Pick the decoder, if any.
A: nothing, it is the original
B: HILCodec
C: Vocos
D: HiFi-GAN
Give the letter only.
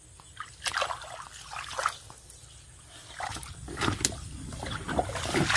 A